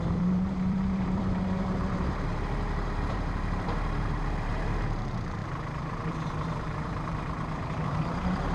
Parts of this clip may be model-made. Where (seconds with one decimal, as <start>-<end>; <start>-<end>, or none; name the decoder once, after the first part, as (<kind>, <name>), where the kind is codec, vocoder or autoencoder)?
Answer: 0.0-8.5 (vocoder, BigVGAN v2)